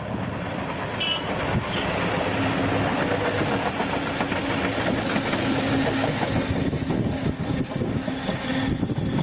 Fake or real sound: real